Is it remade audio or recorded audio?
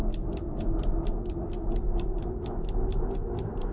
recorded